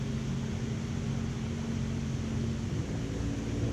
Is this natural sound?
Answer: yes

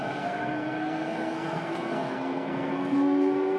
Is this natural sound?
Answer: no